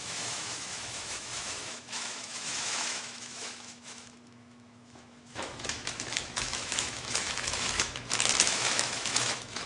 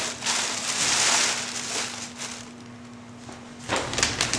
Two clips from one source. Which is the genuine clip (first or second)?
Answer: second